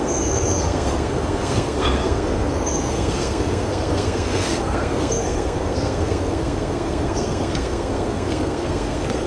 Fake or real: fake